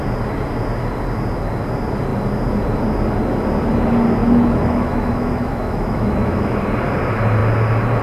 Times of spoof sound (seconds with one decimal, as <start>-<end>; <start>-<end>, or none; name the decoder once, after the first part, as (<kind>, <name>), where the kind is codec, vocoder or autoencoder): 4.2-6.6 (autoencoder, DAC-VAE)